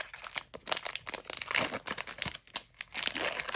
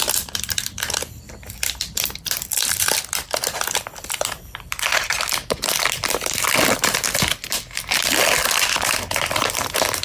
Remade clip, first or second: second